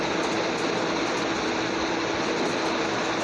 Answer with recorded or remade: recorded